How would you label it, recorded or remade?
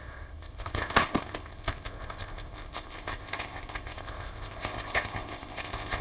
remade